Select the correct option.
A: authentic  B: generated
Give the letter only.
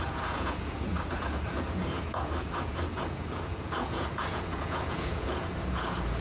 B